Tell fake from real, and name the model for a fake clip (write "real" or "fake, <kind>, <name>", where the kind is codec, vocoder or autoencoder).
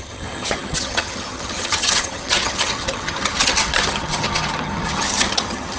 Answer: fake, vocoder, HiFi-GAN